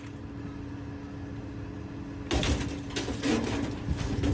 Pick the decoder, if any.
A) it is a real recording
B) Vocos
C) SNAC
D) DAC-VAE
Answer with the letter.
A